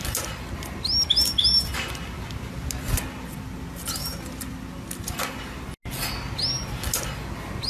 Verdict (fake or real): real